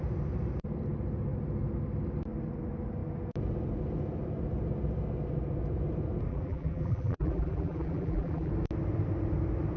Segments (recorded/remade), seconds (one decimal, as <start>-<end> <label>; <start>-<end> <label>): 0.0-6.3 recorded; 6.3-8.5 remade; 8.5-9.8 recorded